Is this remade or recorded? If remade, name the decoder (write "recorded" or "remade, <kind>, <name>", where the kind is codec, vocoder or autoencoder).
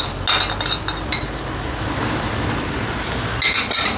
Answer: recorded